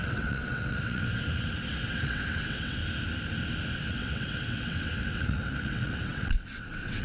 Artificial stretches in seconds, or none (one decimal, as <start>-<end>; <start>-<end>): 0.0-1.1; 1.7-2.8; 3.8-7.0